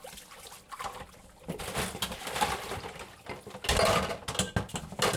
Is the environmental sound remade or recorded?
recorded